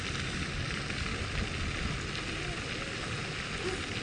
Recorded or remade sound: recorded